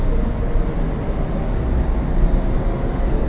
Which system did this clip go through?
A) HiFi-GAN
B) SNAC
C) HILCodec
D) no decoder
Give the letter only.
D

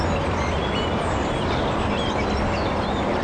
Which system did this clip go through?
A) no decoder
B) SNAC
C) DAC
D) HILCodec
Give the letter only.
A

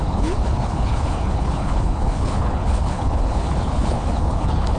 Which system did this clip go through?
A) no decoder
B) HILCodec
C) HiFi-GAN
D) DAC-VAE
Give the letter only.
B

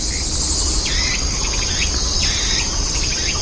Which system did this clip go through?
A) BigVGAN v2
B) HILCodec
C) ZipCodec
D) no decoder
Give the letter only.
D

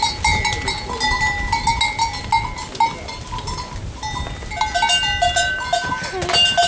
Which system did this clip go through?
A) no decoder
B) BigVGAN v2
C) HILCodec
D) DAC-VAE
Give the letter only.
A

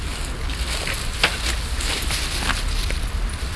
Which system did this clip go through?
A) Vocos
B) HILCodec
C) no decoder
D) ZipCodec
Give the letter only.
C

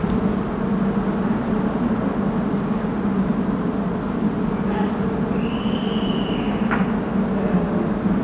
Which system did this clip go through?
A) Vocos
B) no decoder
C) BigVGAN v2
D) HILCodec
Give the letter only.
B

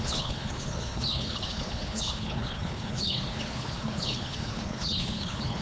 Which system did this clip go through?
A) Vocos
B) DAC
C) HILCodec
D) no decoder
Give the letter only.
C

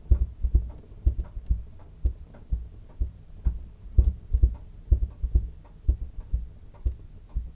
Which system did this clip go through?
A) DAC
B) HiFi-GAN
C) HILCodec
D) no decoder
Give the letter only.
D